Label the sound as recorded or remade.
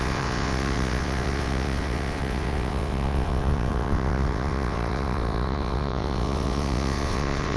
remade